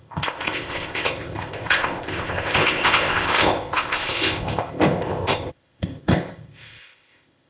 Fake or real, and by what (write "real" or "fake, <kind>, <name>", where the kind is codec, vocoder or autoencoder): fake, codec, ZipCodec